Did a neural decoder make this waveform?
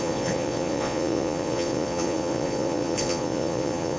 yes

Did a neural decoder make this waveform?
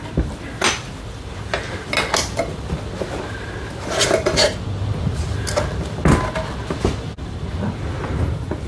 no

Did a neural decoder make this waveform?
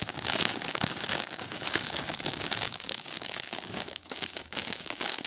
yes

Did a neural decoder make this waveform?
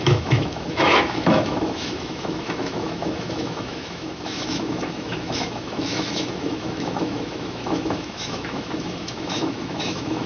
yes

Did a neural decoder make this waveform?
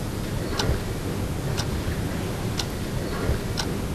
no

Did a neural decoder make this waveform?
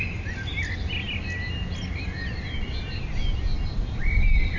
no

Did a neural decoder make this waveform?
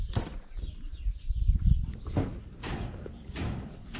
no